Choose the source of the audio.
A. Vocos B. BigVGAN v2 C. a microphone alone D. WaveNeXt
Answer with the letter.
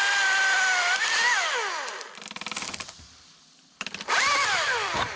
B